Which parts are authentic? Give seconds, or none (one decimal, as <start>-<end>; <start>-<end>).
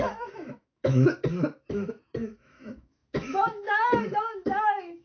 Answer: none